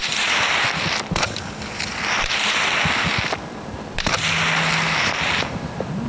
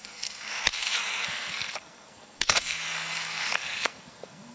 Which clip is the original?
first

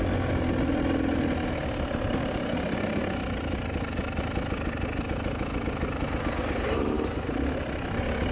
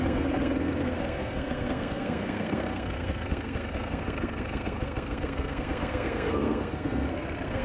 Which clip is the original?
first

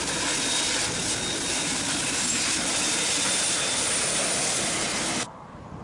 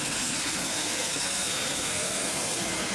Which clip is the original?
first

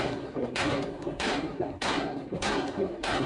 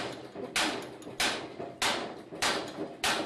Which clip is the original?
second